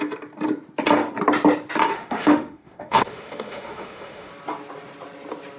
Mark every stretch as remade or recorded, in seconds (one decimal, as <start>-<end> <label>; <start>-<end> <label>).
0.0-1.9 recorded; 1.9-4.3 remade; 4.3-5.6 recorded